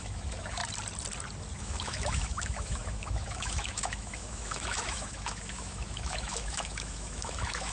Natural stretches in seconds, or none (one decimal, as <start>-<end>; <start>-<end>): 0.6-1.6